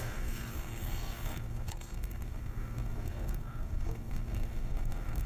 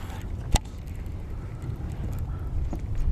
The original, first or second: second